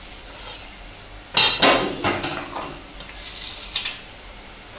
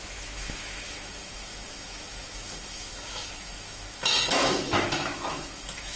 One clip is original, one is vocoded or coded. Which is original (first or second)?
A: first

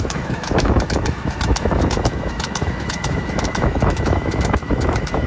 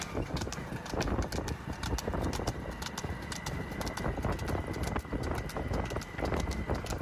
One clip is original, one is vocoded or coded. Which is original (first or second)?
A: second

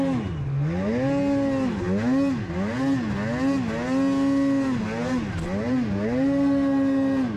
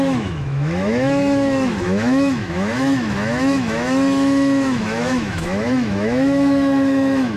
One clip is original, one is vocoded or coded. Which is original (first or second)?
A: first